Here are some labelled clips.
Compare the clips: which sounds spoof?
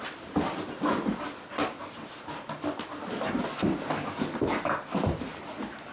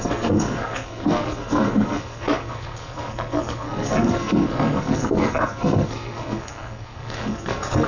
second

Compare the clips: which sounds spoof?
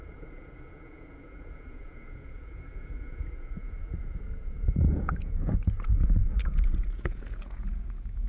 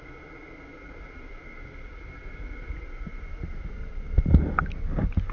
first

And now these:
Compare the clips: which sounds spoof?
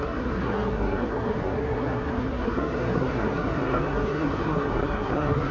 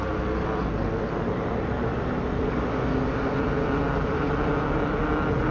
first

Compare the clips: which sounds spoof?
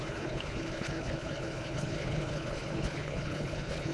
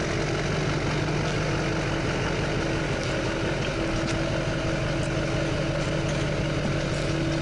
first